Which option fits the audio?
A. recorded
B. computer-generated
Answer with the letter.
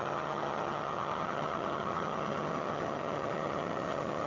B